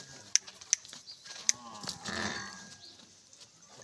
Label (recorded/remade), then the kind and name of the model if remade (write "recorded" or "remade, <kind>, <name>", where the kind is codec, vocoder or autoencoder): recorded